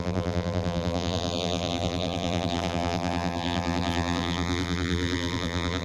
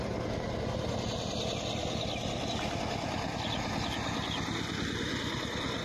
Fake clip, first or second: first